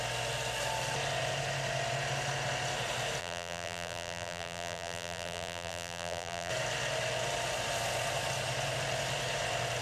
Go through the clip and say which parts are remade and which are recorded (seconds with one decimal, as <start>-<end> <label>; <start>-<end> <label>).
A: 0.0-3.2 recorded; 3.2-6.5 remade; 6.5-9.8 recorded